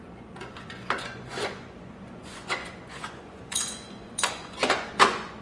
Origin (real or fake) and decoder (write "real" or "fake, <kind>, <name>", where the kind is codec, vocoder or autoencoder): fake, vocoder, Vocos